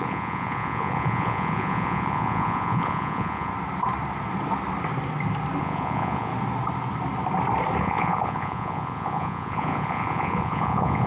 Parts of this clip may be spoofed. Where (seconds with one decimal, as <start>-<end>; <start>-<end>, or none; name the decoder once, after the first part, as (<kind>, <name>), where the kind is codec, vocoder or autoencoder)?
0.0-3.5 (vocoder, Vocos); 5.6-6.3; 7.8-11.1